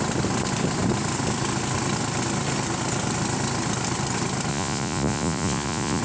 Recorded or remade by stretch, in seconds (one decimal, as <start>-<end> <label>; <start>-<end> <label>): 0.0-4.5 recorded; 4.5-6.0 remade